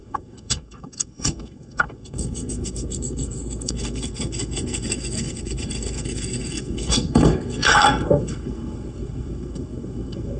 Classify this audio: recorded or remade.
remade